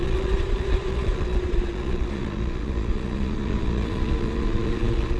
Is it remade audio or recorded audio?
remade